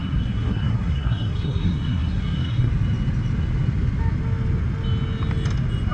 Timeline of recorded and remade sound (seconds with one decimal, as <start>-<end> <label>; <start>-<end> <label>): 0.0-2.7 remade; 2.7-5.9 recorded